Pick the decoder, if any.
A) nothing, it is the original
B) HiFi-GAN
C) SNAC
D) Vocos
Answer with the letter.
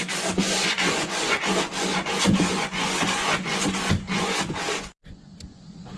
D